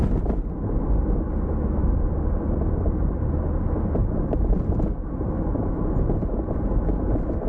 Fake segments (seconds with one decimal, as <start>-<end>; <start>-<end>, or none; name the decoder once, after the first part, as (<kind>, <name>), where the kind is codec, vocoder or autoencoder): 1.8-3.6 (vocoder, BigVGAN v2); 4.0-5.7